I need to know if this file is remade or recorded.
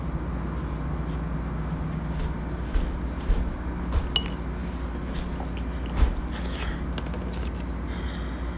recorded